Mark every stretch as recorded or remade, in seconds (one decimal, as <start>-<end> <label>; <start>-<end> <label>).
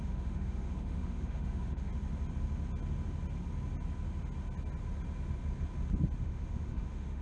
0.0-1.9 remade; 1.9-6.2 recorded; 6.2-7.2 remade